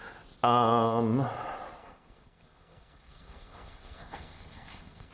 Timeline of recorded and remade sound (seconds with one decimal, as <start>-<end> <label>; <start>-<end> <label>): 0.0-1.8 recorded; 1.8-5.1 remade